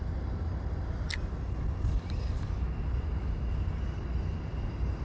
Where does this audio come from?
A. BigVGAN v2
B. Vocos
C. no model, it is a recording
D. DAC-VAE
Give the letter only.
C